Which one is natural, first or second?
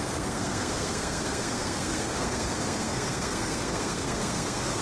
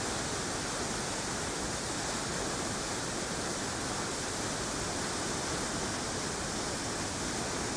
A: second